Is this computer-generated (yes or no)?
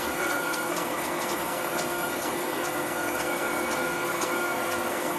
yes